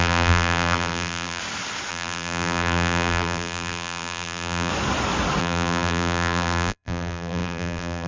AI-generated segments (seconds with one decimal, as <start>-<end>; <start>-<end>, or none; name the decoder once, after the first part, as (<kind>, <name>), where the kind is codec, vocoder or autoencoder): 0.0-1.4 (vocoder, BigVGAN v2); 1.9-4.7; 5.4-8.1